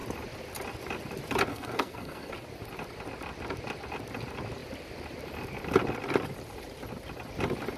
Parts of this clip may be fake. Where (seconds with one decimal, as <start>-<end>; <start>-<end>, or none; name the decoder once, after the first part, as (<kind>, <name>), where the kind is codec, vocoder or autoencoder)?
1.5-2.3 (codec, SNAC)